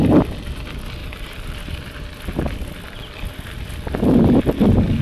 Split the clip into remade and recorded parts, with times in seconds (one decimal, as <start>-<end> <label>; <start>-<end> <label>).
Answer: 0.0-1.0 recorded; 1.0-3.0 remade; 3.0-5.0 recorded